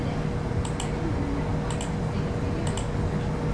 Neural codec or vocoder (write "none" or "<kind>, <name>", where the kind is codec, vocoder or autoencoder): none